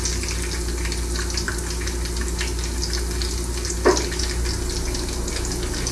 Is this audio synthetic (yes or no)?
no